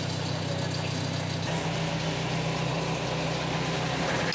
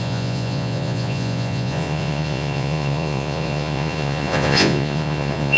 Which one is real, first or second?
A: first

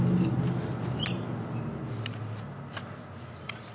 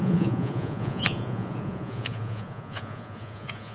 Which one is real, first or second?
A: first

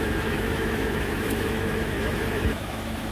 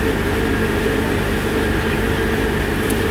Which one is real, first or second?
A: second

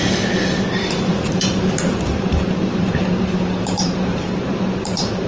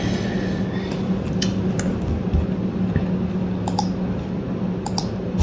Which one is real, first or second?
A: second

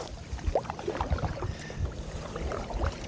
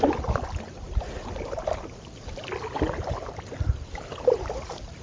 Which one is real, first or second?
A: second